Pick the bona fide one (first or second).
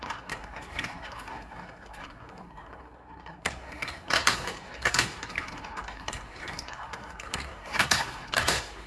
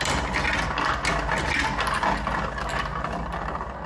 second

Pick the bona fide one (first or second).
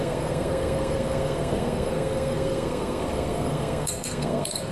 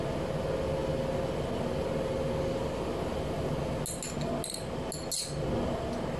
second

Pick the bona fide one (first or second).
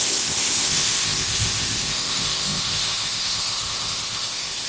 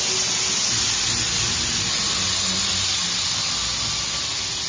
second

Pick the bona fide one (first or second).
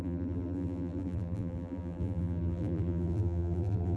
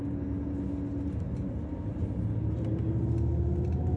second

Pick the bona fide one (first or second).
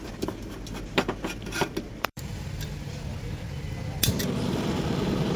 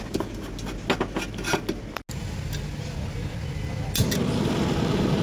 second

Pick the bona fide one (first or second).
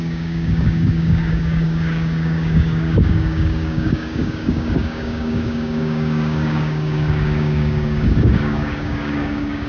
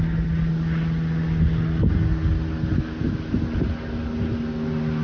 second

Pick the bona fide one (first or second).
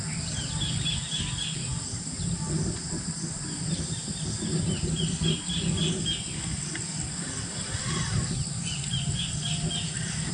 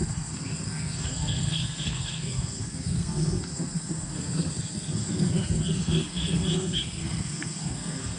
first